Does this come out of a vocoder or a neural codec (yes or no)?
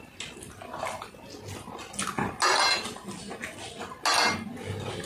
no